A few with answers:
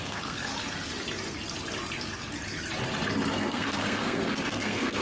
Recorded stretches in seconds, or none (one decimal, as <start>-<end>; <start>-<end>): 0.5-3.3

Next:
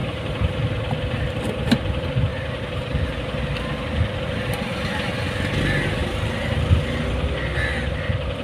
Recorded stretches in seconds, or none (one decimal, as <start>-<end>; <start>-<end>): 1.2-2.3; 3.2-8.4

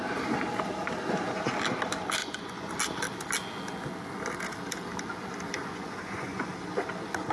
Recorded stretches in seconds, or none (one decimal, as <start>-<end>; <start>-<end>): 0.0-2.2; 2.7-5.6; 6.5-7.3